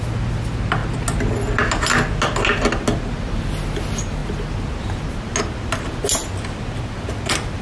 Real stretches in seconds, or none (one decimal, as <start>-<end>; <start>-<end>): 0.0-7.6